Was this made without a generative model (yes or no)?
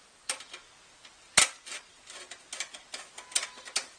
yes